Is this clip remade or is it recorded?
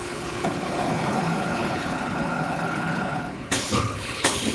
remade